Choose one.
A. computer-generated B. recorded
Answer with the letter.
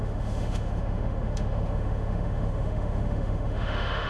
A